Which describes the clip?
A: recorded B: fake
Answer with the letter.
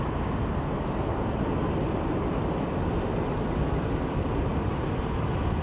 A